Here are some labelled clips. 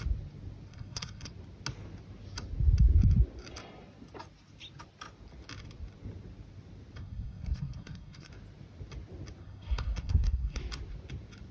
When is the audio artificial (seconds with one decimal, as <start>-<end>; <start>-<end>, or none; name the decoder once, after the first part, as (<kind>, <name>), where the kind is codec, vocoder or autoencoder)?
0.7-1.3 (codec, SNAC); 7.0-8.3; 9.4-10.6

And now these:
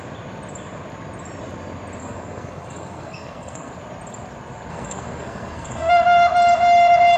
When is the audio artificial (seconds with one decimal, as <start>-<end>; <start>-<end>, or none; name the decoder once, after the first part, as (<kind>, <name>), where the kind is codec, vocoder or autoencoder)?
2.0-3.7 (codec, SNAC); 4.7-5.9

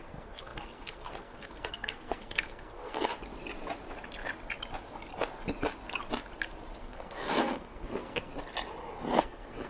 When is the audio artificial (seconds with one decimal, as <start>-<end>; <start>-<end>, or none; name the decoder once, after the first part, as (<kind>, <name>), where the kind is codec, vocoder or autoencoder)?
0.0-3.1 (codec, SNAC); 6.8-8.3; 9.1-9.7